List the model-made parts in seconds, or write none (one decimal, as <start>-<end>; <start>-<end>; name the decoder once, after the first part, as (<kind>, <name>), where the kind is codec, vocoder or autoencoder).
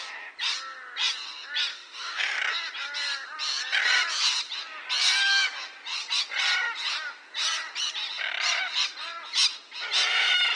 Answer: 1.7-2.4 (autoencoder, DAC-VAE)